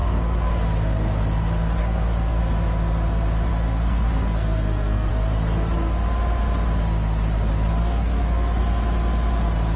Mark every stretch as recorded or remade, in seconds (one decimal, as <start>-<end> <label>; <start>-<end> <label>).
0.0-0.5 remade; 0.5-1.8 recorded; 1.8-2.4 remade; 2.4-3.5 recorded; 3.5-5.1 remade; 5.1-7.8 recorded; 7.8-8.6 remade; 8.6-9.8 recorded